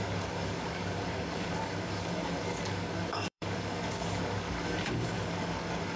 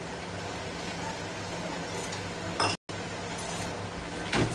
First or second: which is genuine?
second